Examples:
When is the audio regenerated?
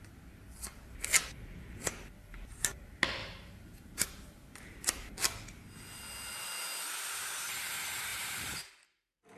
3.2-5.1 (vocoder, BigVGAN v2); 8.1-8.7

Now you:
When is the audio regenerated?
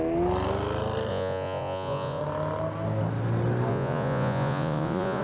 1.1-2.2 (vocoder, Vocos); 3.7-5.2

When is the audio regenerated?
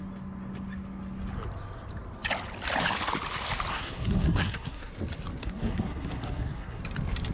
3.7-4.9 (codec, SNAC); 5.4-6.8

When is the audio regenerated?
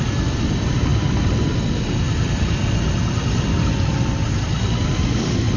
none